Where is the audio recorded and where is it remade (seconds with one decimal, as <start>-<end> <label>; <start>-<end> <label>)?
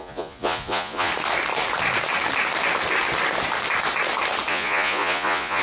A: 0.0-1.1 remade; 1.1-4.5 recorded; 4.5-5.6 remade